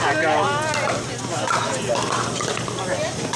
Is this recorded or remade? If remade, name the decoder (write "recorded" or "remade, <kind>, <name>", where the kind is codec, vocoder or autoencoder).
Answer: recorded